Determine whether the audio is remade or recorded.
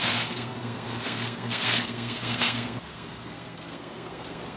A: remade